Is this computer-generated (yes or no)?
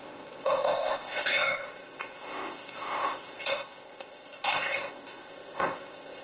yes